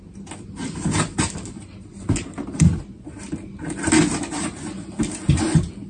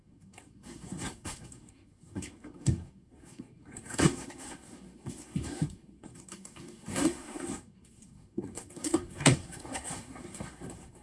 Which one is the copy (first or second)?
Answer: second